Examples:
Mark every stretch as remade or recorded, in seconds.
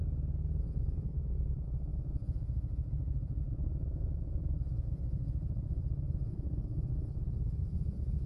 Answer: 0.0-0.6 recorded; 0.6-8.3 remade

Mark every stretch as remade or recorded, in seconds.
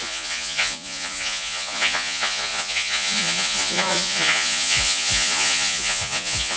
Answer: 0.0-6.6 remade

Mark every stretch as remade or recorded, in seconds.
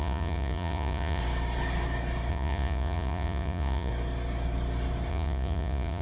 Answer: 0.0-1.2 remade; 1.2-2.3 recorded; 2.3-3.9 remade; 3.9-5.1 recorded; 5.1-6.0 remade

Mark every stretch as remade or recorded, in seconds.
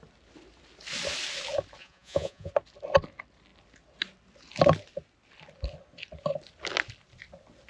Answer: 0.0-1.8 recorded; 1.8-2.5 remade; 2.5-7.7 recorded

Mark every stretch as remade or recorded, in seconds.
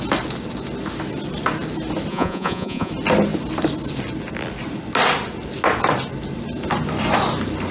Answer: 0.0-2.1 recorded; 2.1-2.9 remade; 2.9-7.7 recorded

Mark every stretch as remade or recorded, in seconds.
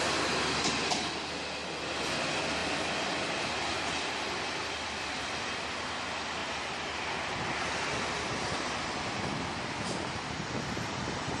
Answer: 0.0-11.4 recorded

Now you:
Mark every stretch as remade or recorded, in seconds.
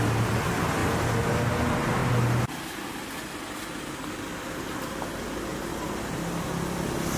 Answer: 0.0-7.2 recorded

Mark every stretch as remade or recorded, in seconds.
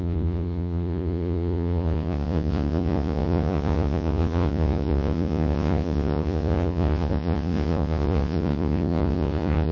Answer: 0.0-9.7 remade